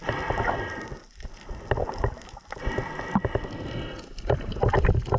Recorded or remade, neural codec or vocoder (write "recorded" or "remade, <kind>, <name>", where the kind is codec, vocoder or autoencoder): recorded